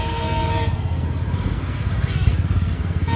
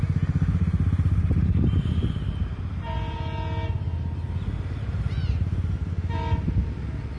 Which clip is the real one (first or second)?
second